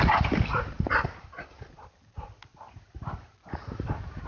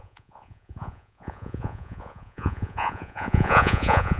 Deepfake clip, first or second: second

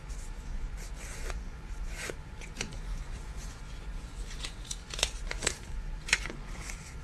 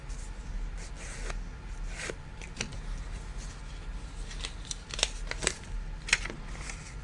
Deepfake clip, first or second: first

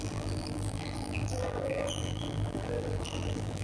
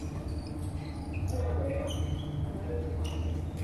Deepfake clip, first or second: first